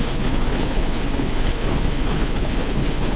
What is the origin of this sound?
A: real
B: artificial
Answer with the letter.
B